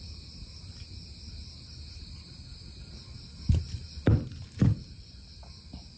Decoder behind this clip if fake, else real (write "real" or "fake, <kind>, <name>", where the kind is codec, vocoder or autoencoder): real